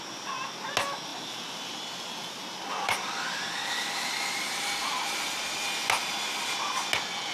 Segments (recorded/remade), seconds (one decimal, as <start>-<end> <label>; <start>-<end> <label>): 0.0-1.1 recorded; 1.1-5.2 remade; 5.2-7.3 recorded